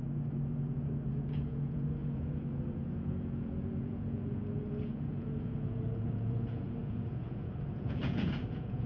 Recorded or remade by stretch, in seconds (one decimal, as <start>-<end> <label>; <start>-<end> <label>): 0.0-8.9 remade